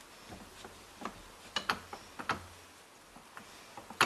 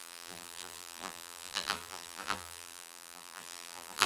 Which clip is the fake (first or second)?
second